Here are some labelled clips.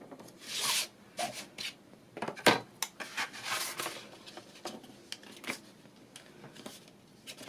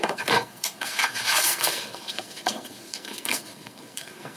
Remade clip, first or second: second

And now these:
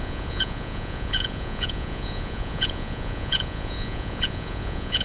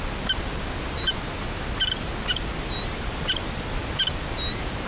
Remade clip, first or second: first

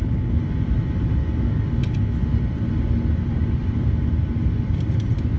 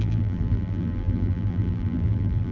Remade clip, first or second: second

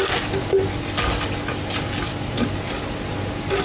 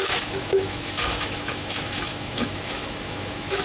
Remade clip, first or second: second